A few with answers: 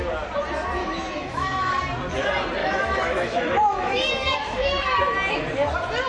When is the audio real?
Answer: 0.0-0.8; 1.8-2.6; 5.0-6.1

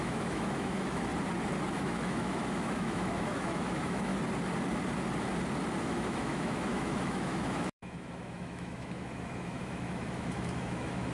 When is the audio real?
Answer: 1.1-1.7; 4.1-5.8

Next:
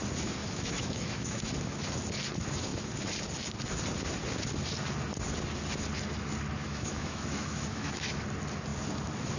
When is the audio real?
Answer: 0.0-0.4; 1.5-6.6; 8.2-9.4

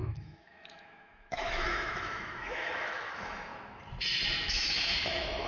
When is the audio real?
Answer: 3.5-4.2